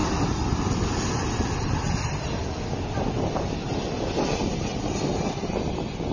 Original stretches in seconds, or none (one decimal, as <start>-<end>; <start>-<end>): 0.0-4.7; 5.4-6.1